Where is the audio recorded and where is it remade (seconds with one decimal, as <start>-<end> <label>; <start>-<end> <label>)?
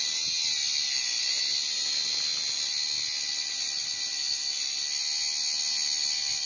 0.0-6.5 recorded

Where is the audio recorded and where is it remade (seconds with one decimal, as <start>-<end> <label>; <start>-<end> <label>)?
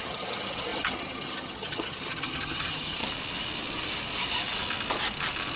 0.0-3.0 remade; 3.0-5.6 recorded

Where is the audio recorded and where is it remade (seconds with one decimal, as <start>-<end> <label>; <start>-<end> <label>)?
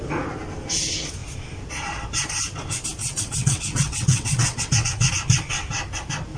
0.0-3.0 recorded; 3.0-5.1 remade; 5.1-6.4 recorded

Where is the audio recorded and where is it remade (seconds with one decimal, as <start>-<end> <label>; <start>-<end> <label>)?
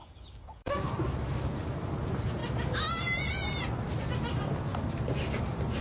0.0-0.9 remade; 0.9-5.8 recorded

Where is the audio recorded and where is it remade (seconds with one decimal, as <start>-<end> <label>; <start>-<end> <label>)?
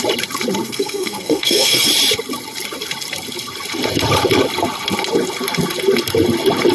0.0-0.6 recorded; 0.6-1.9 remade; 1.9-6.7 recorded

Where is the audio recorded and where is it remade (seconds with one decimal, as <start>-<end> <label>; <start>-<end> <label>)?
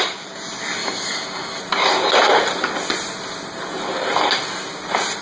0.0-0.8 recorded; 0.8-1.6 remade; 1.6-5.2 recorded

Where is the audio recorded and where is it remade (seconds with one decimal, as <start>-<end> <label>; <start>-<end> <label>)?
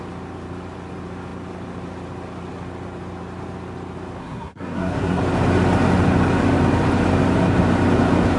0.0-4.2 recorded; 4.2-5.2 remade; 5.2-8.4 recorded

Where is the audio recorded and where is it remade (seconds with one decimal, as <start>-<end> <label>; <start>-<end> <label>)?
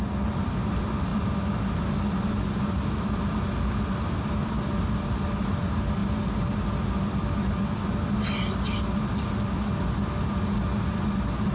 0.0-11.5 recorded